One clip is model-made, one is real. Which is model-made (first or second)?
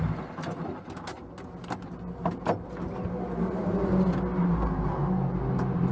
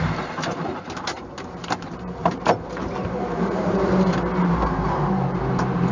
second